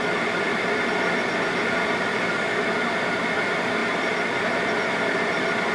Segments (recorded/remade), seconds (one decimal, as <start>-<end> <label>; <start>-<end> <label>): 0.0-5.7 recorded